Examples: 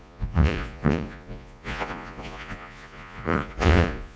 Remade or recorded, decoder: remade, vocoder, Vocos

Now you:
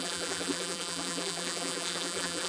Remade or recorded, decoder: remade, vocoder, BigVGAN v2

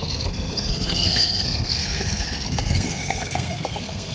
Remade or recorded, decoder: remade, codec, SNAC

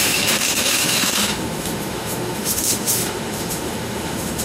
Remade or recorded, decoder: remade, autoencoder, DAC-VAE